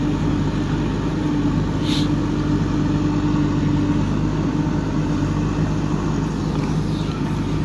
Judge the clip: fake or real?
real